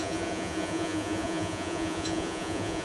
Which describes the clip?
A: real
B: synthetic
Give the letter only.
B